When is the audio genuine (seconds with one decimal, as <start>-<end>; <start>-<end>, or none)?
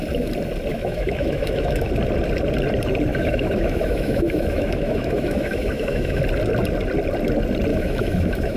0.0-0.7; 1.9-3.1; 6.2-7.7